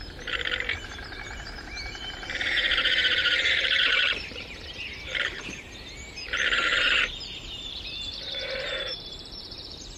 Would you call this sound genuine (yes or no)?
no